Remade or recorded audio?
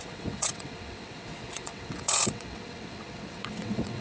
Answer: remade